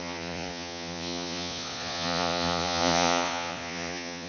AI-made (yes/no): yes